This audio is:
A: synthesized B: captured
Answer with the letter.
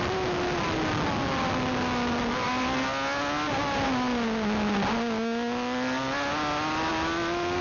B